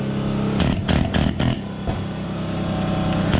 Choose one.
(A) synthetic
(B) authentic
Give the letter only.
B